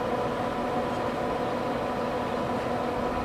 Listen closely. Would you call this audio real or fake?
real